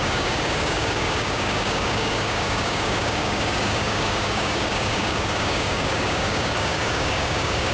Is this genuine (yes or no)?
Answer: no